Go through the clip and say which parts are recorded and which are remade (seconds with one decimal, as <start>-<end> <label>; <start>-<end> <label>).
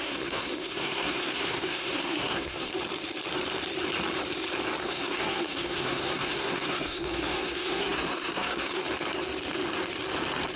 0.0-2.7 remade; 2.7-4.8 recorded; 4.8-8.8 remade; 8.8-10.6 recorded